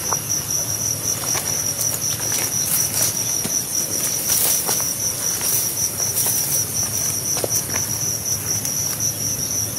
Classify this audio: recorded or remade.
recorded